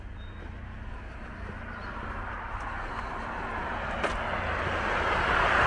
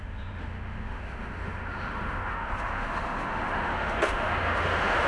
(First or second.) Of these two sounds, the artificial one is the second